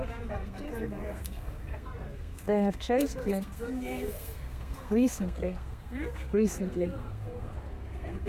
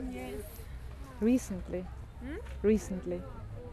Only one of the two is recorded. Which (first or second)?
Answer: second